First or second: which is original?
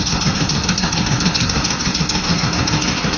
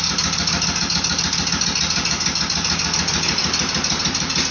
second